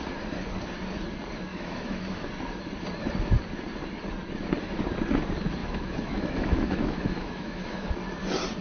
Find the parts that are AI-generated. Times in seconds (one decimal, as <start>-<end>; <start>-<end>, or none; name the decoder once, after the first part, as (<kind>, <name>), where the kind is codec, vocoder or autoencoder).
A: 1.5-2.3 (autoencoder, DAC-VAE); 5.6-7.9